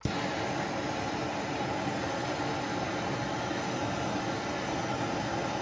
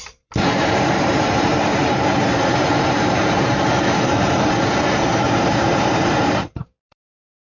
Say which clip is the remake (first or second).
second